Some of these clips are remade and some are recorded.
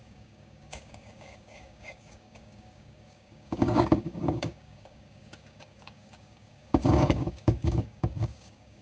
remade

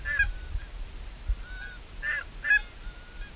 recorded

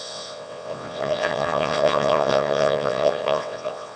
remade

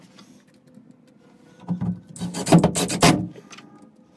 recorded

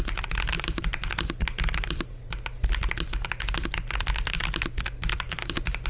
recorded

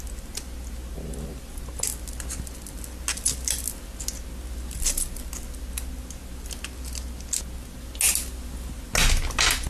recorded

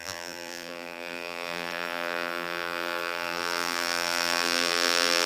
remade